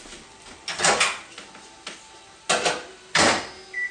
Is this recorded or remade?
recorded